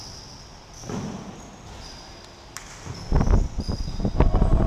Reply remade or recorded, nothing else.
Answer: recorded